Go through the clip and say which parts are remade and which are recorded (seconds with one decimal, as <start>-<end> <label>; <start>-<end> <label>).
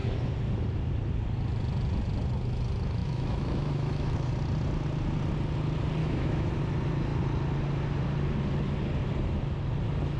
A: 0.0-3.0 recorded; 3.0-4.3 remade; 4.3-6.0 recorded; 6.0-6.5 remade; 6.5-10.2 recorded